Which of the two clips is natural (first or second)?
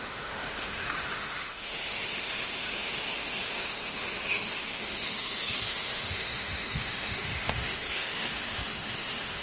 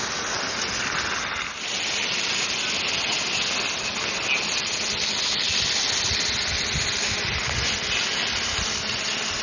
second